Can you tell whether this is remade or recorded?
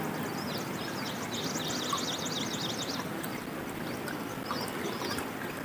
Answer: recorded